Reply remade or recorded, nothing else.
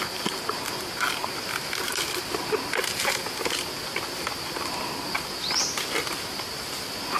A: recorded